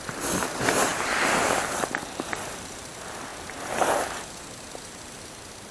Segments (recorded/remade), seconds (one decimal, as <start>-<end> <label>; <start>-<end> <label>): 0.0-5.7 recorded